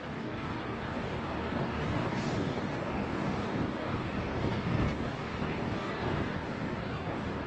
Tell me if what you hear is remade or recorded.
remade